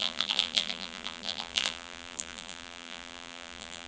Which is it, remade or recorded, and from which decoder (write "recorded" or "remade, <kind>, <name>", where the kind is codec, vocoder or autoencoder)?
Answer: remade, vocoder, BigVGAN v2